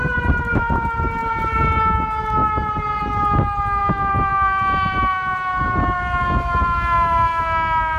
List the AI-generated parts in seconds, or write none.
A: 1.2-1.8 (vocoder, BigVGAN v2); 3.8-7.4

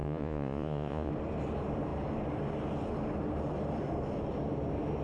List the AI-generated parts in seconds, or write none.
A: 0.0-1.1 (vocoder, Vocos)

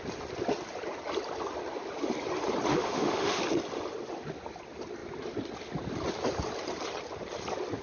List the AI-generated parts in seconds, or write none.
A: 2.7-3.4 (autoencoder, DAC-VAE)

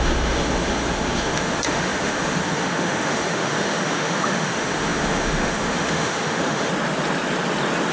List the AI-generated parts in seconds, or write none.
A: 0.0-6.7 (autoencoder, DAC-VAE)